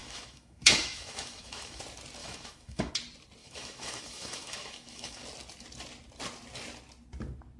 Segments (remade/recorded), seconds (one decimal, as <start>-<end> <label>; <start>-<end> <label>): 0.0-1.8 remade; 1.8-2.2 recorded; 2.2-2.9 remade; 2.9-3.4 recorded; 3.4-5.2 remade; 5.2-7.6 recorded